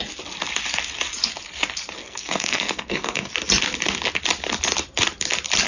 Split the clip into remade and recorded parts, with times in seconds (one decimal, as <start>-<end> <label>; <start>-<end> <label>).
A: 0.0-2.0 recorded; 2.0-3.3 remade; 3.3-5.7 recorded